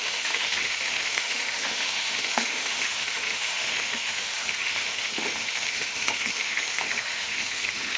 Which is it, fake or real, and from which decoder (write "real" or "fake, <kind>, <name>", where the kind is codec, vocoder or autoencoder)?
fake, autoencoder, DAC-VAE